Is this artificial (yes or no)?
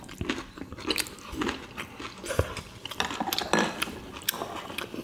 no